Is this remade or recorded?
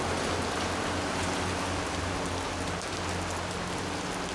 recorded